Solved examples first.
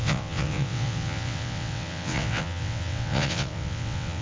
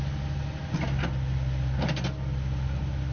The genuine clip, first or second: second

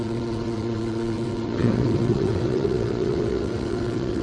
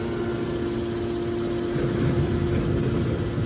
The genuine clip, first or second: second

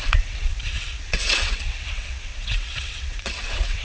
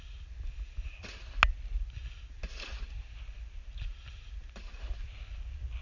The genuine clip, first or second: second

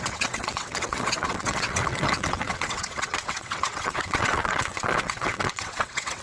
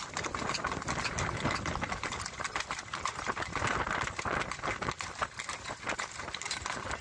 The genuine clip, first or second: second